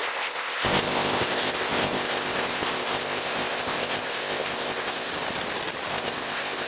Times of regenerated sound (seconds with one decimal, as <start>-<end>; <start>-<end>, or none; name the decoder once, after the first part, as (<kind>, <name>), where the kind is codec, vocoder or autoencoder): 0.0-5.1 (codec, ZipCodec); 5.9-6.7